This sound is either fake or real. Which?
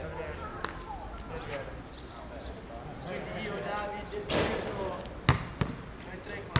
real